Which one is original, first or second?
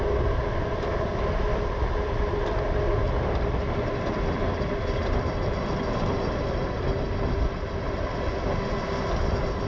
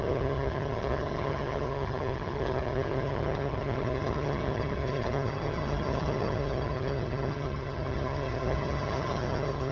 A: first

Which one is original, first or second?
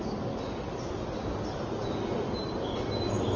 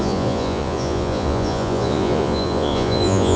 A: first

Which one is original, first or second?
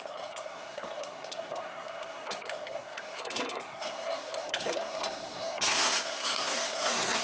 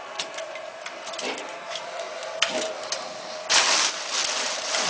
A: second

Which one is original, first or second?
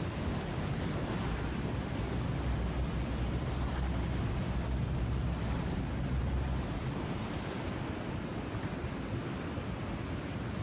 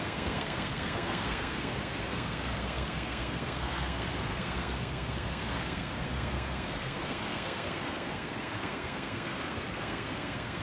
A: first